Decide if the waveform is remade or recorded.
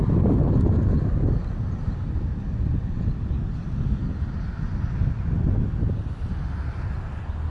recorded